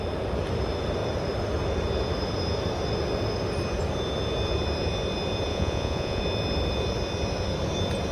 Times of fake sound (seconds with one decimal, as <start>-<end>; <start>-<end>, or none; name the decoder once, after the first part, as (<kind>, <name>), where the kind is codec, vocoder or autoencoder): 5.5-6.2 (vocoder, Vocos)